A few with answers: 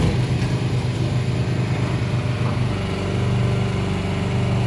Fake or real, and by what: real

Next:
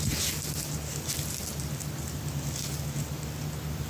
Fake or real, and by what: real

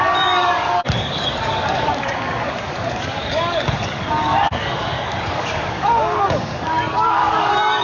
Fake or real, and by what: fake, codec, DAC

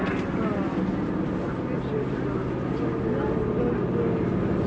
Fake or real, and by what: real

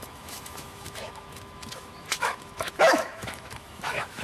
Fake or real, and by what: fake, autoencoder, DAC-VAE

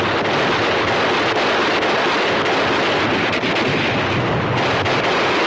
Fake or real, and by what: real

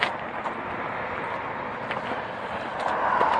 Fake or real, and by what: real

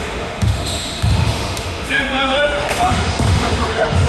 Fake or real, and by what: fake, autoencoder, DAC-VAE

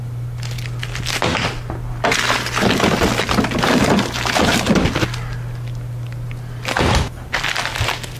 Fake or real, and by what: real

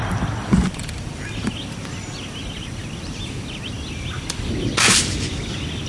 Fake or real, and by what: real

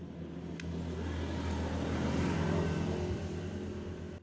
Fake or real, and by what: real